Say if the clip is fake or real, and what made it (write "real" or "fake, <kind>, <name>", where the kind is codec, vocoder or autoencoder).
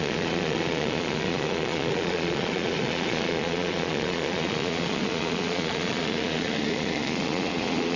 fake, vocoder, Vocos